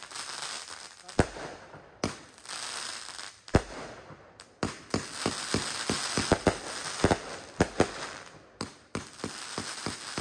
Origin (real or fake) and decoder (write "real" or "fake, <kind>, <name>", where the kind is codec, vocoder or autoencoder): real